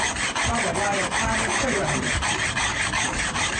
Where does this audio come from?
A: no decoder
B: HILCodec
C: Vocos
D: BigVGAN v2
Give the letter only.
A